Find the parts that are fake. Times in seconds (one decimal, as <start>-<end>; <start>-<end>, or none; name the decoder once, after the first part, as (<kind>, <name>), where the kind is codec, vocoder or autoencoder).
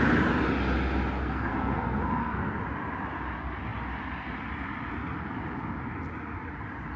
1.2-2.6 (codec, SNAC)